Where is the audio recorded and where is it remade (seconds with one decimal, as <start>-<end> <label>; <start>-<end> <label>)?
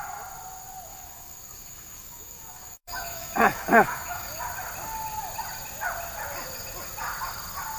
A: 0.0-0.9 recorded; 0.9-4.4 remade; 4.4-7.8 recorded